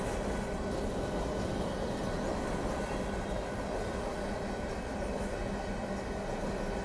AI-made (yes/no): no